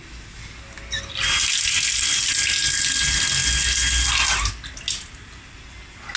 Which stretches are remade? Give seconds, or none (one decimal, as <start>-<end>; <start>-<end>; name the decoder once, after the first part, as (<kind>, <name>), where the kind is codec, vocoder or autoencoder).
none